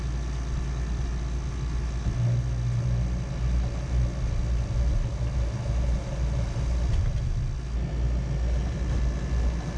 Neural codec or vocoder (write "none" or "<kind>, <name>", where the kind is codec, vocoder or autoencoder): none